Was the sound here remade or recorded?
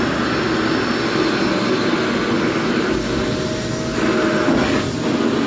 recorded